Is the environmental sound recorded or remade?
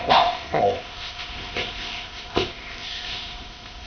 remade